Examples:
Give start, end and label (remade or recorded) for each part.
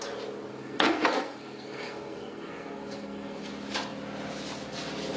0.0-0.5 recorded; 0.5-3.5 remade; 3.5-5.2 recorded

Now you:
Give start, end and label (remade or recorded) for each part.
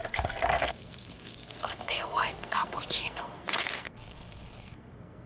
0.0-5.3 remade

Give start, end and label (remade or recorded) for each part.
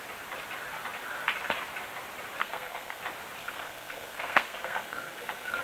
0.0-2.4 recorded; 2.4-3.0 remade; 3.0-3.4 recorded; 3.4-5.6 remade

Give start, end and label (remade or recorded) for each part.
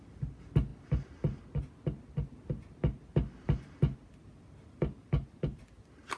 0.0-6.2 recorded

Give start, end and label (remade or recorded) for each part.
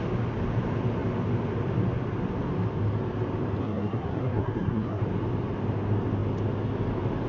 0.0-3.6 recorded; 3.6-5.0 remade; 5.0-7.3 recorded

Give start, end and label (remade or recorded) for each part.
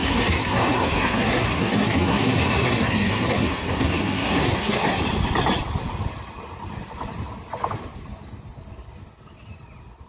0.0-5.0 remade; 5.0-10.1 recorded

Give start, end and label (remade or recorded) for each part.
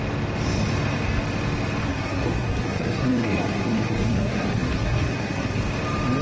0.0-1.9 recorded; 1.9-5.6 remade; 5.6-6.2 recorded